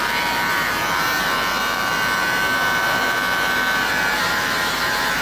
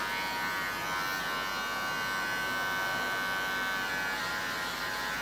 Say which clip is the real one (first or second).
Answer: second